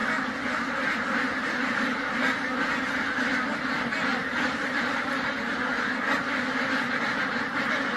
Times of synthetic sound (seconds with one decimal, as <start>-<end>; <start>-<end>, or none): 4.1-5.0